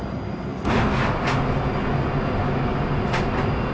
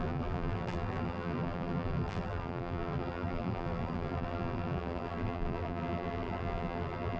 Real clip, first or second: first